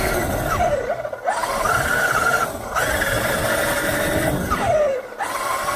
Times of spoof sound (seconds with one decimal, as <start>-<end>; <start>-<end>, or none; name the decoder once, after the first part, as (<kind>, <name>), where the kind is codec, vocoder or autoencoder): none